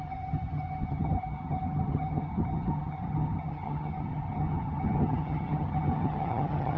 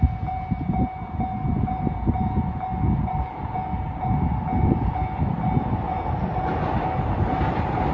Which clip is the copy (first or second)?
first